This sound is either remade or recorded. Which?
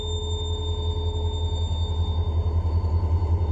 recorded